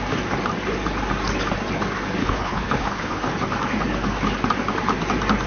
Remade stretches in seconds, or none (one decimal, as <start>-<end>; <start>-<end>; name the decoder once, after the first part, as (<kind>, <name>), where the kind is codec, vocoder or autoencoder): 2.2-3.3 (codec, HILCodec)